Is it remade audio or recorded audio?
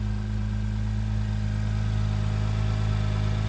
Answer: recorded